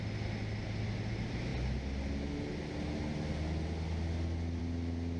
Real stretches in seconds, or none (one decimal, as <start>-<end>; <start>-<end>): 0.0-5.2